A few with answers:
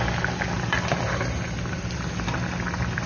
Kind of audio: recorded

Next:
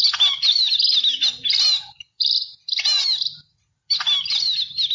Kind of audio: recorded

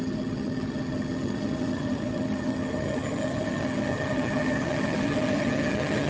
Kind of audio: remade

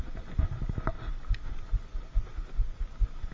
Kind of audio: recorded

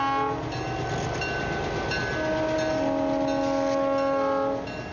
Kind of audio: recorded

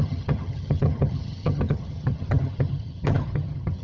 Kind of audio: remade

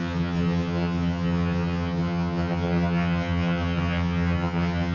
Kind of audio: remade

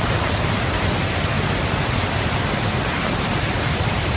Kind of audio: recorded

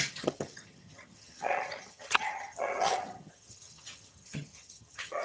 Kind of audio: remade